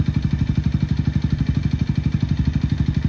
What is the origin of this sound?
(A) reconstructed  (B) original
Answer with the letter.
B